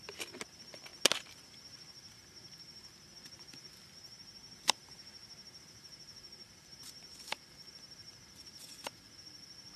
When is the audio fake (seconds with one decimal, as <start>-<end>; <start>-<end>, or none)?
none